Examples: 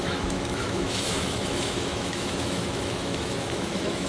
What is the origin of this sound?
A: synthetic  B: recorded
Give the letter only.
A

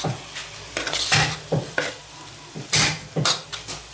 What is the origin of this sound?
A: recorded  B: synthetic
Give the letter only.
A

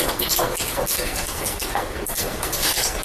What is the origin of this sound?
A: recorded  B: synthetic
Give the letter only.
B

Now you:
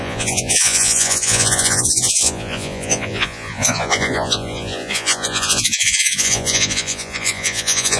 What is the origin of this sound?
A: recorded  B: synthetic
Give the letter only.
B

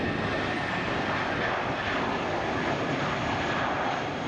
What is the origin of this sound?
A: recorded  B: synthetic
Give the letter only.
A